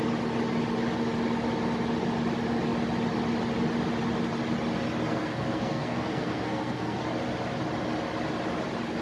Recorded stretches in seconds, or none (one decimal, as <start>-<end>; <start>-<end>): 0.0-5.1; 7.0-9.0

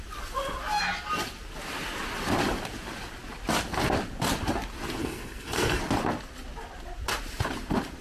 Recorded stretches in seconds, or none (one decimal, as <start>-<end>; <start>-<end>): 0.0-5.0; 5.8-8.0

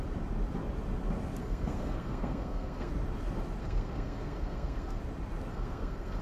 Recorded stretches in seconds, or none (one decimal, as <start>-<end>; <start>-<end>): 0.0-1.4; 2.9-3.6; 5.0-5.5

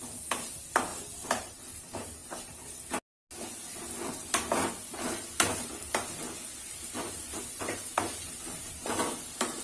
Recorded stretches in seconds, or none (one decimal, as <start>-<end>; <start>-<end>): 0.0-9.6

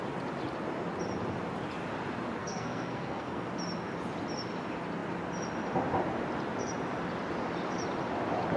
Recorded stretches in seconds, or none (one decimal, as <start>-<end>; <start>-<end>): 0.0-2.4; 3.5-8.6

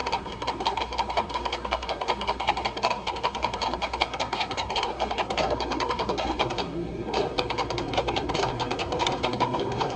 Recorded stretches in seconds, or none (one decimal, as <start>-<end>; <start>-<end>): none

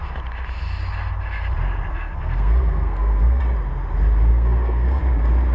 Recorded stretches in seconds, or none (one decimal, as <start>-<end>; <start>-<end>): 0.0-1.9; 3.4-4.3; 5.0-5.5